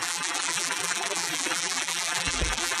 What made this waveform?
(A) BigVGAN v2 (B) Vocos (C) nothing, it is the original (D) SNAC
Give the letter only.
A